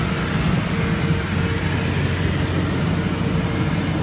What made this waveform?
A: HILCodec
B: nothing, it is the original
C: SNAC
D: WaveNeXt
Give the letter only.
B